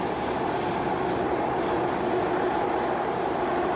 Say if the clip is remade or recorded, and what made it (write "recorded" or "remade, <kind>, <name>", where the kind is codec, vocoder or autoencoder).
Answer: recorded